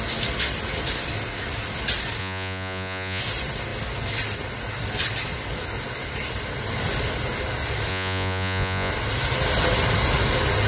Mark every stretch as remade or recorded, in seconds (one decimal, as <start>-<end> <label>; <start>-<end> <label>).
0.0-2.2 recorded; 2.2-3.2 remade; 3.2-7.9 recorded; 7.9-8.9 remade; 8.9-10.7 recorded

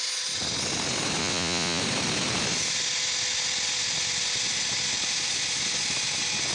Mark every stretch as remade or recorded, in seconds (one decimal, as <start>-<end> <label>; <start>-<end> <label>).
0.0-1.2 recorded; 1.2-1.8 remade; 1.8-6.5 recorded

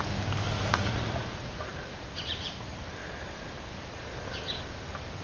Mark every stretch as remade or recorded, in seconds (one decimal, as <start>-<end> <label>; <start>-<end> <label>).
0.0-0.7 recorded; 0.7-2.2 remade; 2.2-5.2 recorded

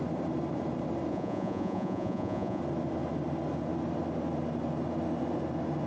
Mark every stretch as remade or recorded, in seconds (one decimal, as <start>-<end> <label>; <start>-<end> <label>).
0.0-1.1 recorded; 1.1-2.6 remade; 2.6-5.9 recorded

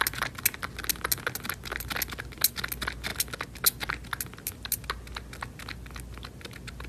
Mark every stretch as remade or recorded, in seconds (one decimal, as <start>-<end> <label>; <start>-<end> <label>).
0.0-6.9 recorded

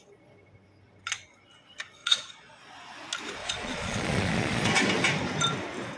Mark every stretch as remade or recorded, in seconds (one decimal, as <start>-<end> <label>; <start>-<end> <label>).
0.0-2.0 recorded; 2.0-2.6 remade; 2.6-3.4 recorded; 3.4-4.7 remade; 4.7-6.0 recorded

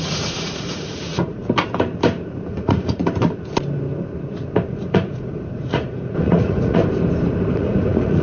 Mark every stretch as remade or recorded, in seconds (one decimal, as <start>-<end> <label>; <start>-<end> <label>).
0.0-1.4 remade; 1.4-2.5 recorded; 2.5-3.0 remade; 3.0-4.7 recorded; 4.7-6.8 remade; 6.8-7.5 recorded; 7.5-8.2 remade